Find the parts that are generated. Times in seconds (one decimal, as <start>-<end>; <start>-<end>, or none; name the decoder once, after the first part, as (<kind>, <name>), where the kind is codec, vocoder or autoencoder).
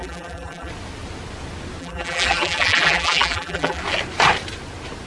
0.0-0.7 (vocoder, BigVGAN v2); 1.8-3.8